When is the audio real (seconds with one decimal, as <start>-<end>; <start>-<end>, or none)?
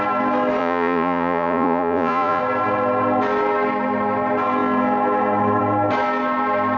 0.0-0.6; 2.4-6.8